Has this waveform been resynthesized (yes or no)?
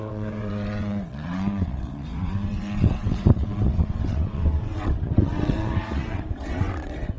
yes